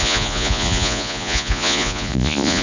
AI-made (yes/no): yes